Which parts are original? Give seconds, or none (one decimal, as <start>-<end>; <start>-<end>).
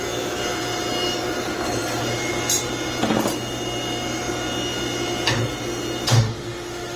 0.0-6.1